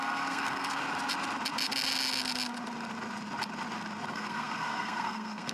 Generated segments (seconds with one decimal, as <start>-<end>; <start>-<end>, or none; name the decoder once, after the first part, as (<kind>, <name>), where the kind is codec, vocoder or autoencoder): 0.0-0.8 (codec, SNAC); 4.1-5.5